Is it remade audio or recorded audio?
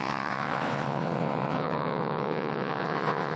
remade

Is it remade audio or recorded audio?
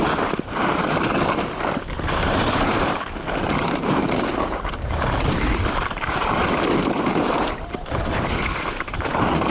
remade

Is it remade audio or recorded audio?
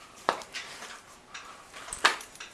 remade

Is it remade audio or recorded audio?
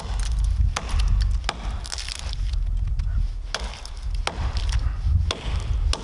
recorded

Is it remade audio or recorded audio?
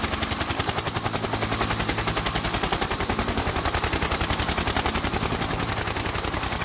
recorded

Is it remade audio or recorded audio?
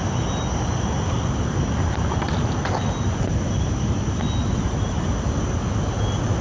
recorded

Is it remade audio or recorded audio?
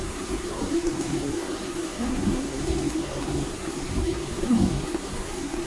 remade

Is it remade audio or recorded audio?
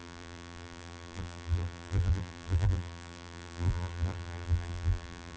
remade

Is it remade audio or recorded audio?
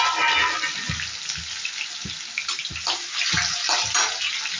recorded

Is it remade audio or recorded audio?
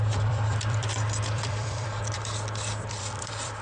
remade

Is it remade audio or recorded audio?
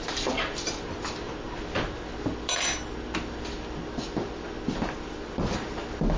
recorded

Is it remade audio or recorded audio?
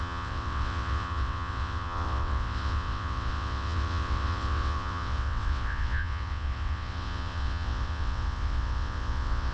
remade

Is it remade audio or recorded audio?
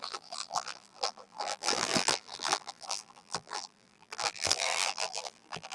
remade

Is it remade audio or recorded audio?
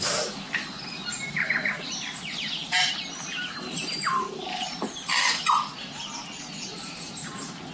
remade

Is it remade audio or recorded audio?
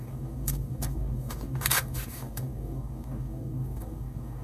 remade